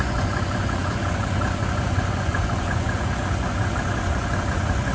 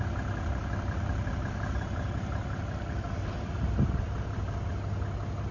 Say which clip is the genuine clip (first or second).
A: second